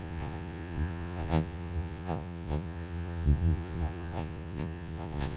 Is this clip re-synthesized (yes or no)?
yes